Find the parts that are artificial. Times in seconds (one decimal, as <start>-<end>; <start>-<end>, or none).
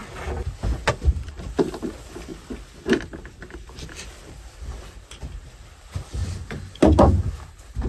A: 0.9-2.3; 3.0-6.2; 7.3-7.9